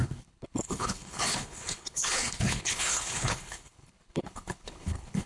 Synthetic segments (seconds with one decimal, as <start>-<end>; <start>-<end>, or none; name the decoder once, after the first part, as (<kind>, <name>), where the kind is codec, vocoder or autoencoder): 0.0-5.3 (codec, HILCodec)